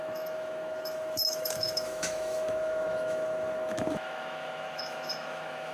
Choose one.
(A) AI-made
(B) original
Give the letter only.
A